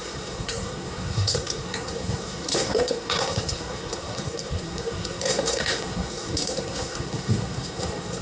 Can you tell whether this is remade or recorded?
remade